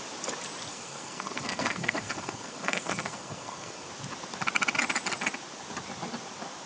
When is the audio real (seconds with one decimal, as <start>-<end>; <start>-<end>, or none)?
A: 0.0-0.7; 3.9-6.7